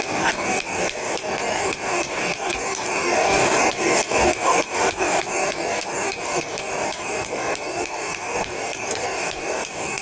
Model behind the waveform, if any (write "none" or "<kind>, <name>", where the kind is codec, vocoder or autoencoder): codec, DAC